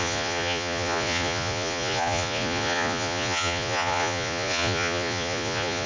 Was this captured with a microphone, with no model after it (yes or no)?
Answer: no